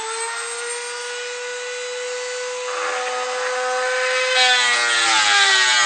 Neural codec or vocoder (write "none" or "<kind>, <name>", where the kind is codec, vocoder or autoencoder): none